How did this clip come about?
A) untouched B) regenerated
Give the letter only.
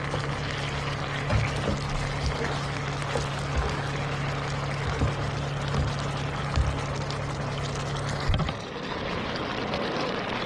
A